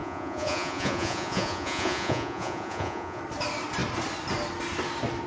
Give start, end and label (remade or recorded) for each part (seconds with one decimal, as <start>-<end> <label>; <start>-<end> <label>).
0.0-3.2 remade; 3.2-5.3 recorded